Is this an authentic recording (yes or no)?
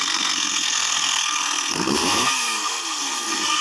no